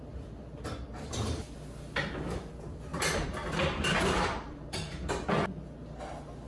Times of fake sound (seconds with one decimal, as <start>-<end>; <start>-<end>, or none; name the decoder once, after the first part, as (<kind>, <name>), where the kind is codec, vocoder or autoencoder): 2.9-5.3 (vocoder, BigVGAN v2)